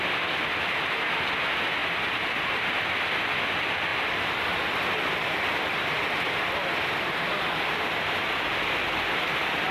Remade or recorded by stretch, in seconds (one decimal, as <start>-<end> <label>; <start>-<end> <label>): 0.0-1.8 recorded; 1.8-2.8 remade; 2.8-3.9 recorded; 3.9-6.5 remade; 6.5-9.7 recorded